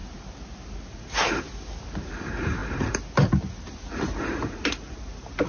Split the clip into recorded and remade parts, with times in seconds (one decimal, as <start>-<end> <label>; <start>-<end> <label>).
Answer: 0.0-5.5 recorded